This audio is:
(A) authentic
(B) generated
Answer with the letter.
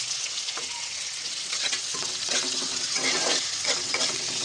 B